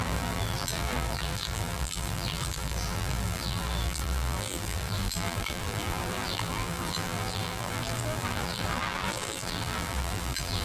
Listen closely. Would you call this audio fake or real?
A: fake